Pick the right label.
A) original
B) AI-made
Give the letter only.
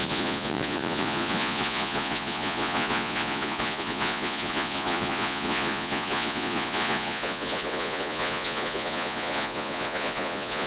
B